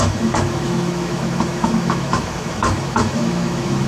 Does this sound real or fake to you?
fake